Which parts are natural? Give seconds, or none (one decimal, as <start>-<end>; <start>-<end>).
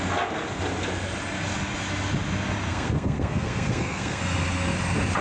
0.0-2.7; 4.2-5.2